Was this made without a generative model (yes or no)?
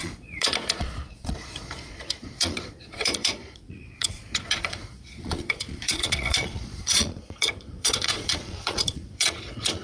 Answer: no